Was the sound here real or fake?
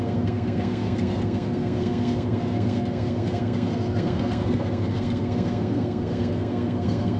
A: fake